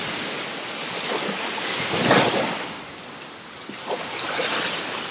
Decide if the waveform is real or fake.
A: real